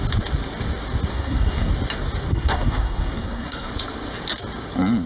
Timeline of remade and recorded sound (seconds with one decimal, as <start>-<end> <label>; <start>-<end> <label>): 0.0-1.1 recorded; 1.1-1.7 remade; 1.7-2.3 recorded; 2.3-3.7 remade; 3.7-5.1 recorded